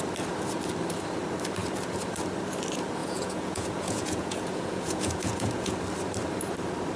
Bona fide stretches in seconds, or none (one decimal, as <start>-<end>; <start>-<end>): 0.0-3.0; 5.7-7.0